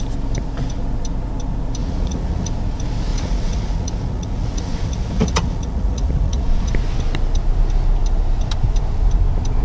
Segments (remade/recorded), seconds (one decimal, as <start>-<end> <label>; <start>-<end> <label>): 0.0-1.8 recorded; 1.8-2.5 remade; 2.5-3.1 recorded; 3.1-6.7 remade; 6.7-9.6 recorded